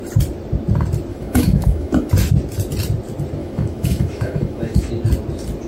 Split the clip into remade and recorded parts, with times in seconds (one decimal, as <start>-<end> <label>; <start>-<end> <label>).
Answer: 0.0-1.1 recorded; 1.1-2.1 remade; 2.1-3.4 recorded; 3.4-4.9 remade; 4.9-5.7 recorded